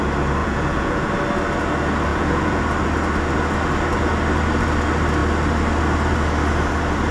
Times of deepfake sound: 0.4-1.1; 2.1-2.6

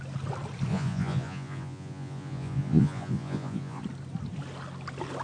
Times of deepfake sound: 0.7-3.8

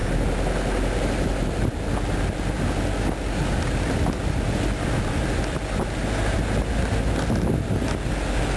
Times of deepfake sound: none

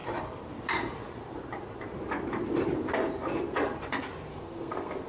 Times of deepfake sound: 4.3-5.1